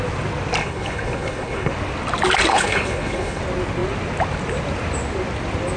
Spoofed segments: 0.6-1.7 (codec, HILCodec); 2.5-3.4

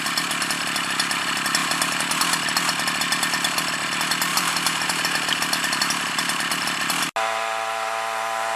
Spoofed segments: 1.6-2.2 (vocoder, BigVGAN v2); 4.3-5.9

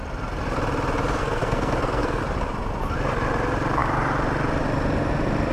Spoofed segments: 1.2-2.2 (codec, SNAC)